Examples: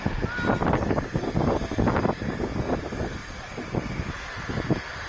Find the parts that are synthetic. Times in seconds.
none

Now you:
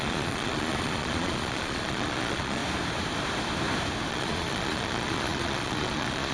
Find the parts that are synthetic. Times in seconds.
0.0-2.6 (vocoder, Vocos); 4.1-6.3

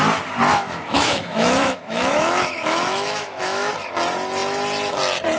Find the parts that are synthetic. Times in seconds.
0.5-3.7 (autoencoder, DAC-VAE)

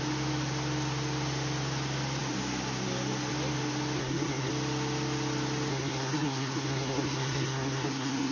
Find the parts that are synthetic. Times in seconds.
4.0-4.5 (codec, SNAC); 5.7-8.3